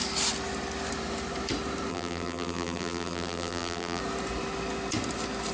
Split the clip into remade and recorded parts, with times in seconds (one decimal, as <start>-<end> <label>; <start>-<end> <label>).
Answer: 0.0-1.9 recorded; 1.9-4.0 remade; 4.0-5.5 recorded